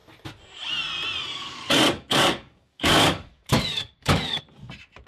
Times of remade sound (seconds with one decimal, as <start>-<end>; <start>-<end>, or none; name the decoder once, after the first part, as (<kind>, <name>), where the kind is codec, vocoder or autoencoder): 1.3-4.4 (codec, DAC)